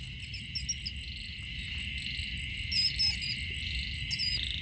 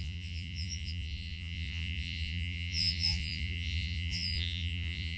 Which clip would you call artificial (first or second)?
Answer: second